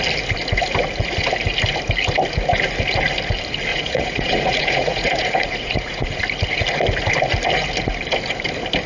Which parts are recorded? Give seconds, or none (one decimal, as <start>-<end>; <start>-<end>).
0.0-3.7; 6.2-8.9